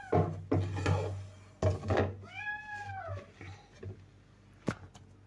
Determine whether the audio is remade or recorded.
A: recorded